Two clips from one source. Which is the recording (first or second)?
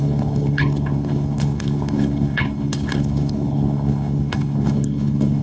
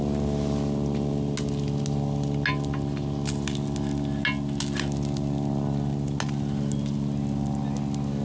second